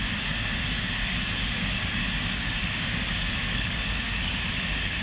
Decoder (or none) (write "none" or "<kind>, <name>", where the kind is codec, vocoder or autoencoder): codec, DAC